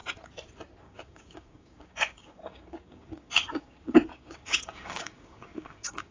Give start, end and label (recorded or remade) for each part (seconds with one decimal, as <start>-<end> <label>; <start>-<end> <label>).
0.0-0.8 recorded; 0.8-6.1 remade